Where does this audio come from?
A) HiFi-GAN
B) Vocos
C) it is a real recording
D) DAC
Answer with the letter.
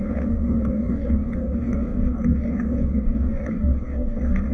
D